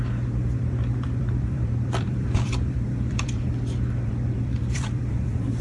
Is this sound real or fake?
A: fake